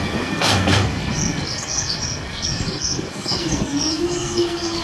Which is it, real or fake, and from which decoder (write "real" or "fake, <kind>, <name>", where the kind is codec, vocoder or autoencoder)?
fake, codec, SNAC